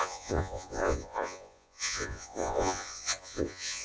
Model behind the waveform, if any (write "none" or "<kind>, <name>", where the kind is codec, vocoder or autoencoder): vocoder, Vocos